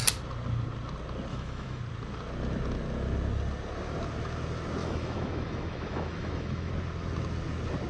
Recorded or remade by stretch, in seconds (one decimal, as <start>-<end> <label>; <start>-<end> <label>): 0.0-1.3 recorded; 1.3-1.8 remade; 1.8-4.8 recorded; 4.8-6.7 remade; 6.7-7.9 recorded